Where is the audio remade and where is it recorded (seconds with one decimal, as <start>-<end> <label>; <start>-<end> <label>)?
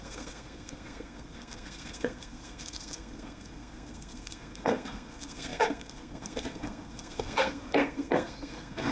0.0-8.9 remade